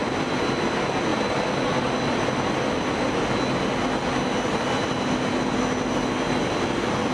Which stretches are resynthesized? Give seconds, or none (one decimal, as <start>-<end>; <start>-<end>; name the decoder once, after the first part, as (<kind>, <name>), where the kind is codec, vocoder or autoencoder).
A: none